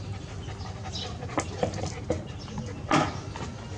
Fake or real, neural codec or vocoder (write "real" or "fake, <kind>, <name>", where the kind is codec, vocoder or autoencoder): real